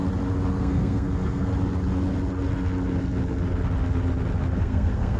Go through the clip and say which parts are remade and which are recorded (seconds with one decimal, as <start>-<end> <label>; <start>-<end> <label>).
0.0-0.6 recorded; 0.6-1.5 remade; 1.5-4.6 recorded; 4.6-5.2 remade